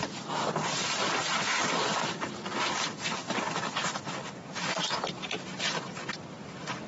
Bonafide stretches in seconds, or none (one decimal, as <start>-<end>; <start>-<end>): 0.0-6.9